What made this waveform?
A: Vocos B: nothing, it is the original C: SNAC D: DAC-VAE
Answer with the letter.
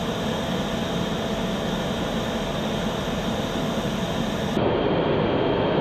B